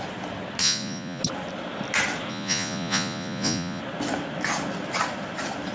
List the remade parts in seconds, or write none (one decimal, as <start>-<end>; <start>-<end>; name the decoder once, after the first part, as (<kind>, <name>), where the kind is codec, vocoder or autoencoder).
0.6-1.2 (vocoder, Vocos); 2.3-3.8